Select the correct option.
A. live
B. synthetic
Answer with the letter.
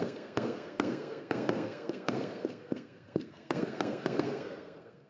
B